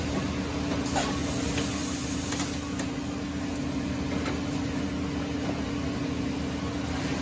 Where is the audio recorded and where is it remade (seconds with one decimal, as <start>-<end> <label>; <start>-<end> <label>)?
0.0-7.2 recorded